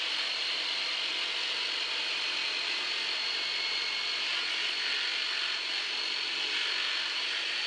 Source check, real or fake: real